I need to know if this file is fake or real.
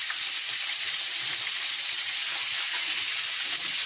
real